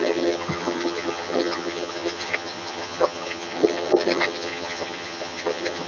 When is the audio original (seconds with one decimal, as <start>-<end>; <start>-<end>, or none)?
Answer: none